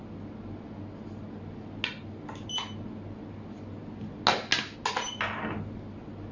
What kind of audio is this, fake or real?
real